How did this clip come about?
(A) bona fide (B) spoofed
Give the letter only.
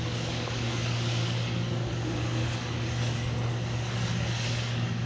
B